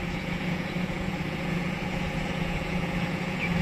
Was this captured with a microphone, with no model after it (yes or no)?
no